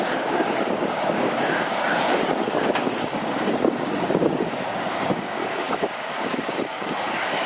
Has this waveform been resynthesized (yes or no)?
yes